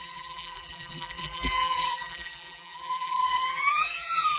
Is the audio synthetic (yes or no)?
yes